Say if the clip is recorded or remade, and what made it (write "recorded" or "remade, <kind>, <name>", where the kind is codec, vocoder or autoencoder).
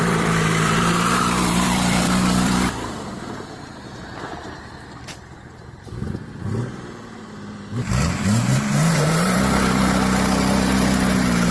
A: remade, vocoder, BigVGAN v2